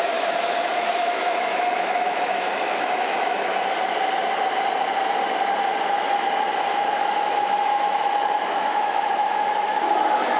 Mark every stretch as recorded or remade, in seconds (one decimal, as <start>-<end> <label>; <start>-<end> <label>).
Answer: 0.0-3.5 remade; 3.5-7.0 recorded; 7.0-10.4 remade